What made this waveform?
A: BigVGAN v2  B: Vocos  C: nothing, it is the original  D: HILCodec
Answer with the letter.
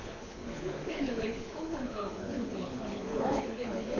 D